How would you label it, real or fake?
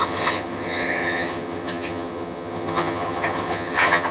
fake